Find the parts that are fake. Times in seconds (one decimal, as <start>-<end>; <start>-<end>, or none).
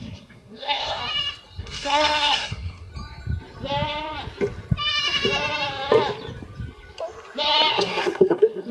0.0-1.0; 1.6-2.9; 7.7-8.7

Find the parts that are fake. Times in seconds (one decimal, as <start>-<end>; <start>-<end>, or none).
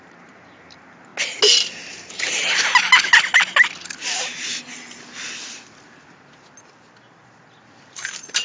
0.0-1.1; 1.7-2.8; 7.2-8.4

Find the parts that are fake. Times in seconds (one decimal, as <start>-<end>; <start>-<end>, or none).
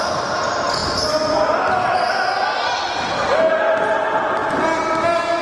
none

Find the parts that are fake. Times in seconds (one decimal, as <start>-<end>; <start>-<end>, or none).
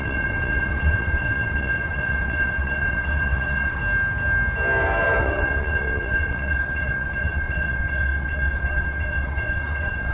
0.0-3.8; 5.2-10.1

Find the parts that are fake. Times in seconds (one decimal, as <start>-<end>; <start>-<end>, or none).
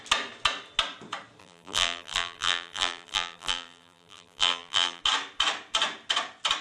1.4-5.0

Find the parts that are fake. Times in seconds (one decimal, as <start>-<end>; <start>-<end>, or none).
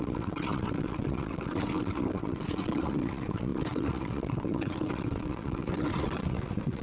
0.0-6.8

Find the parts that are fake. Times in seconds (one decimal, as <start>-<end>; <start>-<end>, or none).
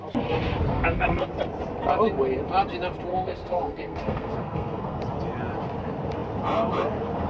0.7-1.3; 3.1-5.0